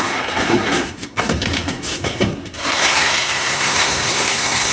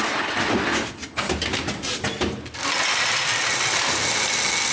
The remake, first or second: first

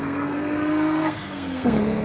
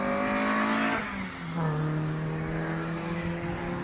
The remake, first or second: first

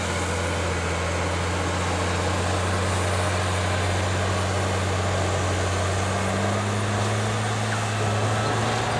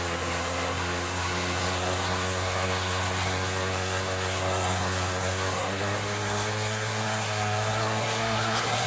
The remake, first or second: second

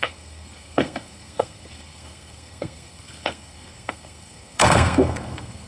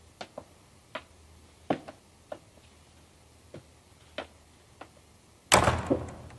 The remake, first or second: first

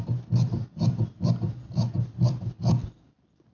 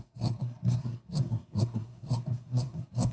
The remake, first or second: second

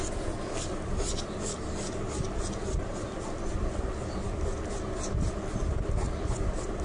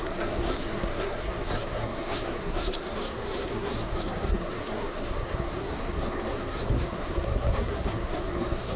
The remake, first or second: second